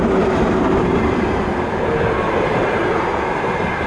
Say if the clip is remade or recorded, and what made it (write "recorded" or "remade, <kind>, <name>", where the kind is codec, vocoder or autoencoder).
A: remade, vocoder, BigVGAN v2